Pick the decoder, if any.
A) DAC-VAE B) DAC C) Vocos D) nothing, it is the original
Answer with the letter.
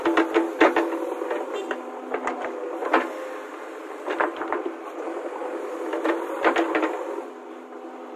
D